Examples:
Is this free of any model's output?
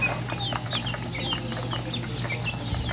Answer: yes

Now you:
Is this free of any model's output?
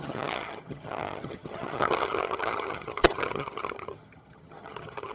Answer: no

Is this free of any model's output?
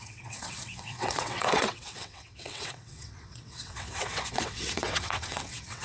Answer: no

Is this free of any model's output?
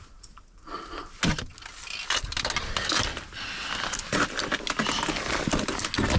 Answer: yes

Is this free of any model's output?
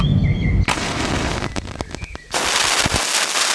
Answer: yes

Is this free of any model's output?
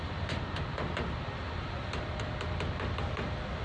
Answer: yes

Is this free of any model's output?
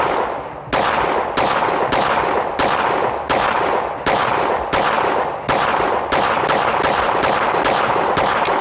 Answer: yes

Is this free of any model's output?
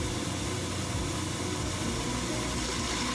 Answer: yes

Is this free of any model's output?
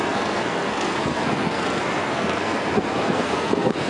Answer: no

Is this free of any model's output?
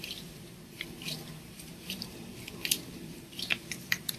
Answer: no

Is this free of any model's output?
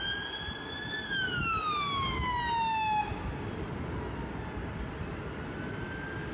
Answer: yes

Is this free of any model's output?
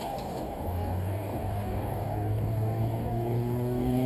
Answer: no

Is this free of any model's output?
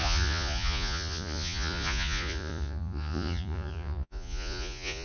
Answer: no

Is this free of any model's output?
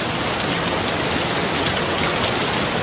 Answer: yes